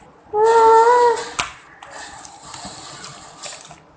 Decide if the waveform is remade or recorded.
recorded